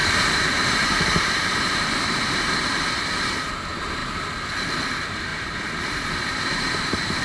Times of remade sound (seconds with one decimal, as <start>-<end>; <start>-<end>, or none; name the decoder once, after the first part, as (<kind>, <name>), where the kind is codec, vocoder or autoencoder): 0.0-3.2 (vocoder, BigVGAN v2); 5.3-7.2